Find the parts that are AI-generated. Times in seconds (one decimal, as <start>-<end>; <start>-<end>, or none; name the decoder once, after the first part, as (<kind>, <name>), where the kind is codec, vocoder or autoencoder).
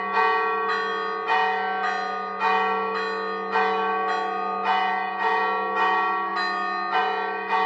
none